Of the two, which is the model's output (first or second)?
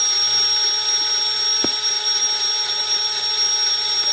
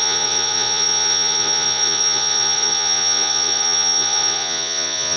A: second